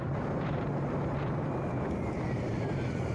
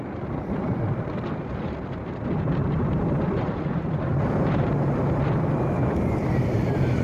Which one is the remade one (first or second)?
second